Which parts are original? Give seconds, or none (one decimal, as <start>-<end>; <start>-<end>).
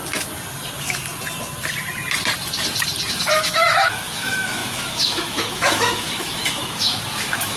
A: 0.0-3.1